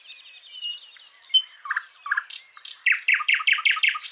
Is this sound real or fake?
real